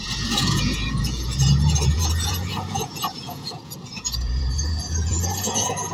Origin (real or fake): fake